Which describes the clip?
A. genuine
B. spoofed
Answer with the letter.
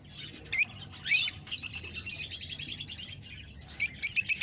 A